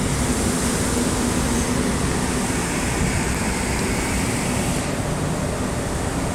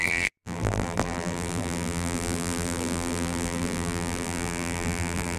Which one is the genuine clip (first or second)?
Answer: first